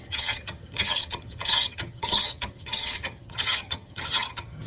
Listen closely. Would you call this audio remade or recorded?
remade